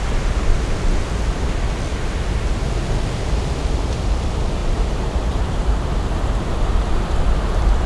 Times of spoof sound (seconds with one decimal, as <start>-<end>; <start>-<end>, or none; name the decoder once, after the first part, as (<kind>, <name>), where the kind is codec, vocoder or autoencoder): 1.9-2.8 (vocoder, BigVGAN v2); 4.6-6.9